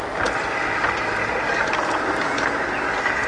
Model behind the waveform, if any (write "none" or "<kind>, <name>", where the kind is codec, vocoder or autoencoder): none